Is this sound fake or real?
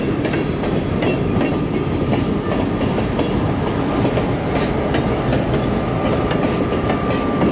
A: real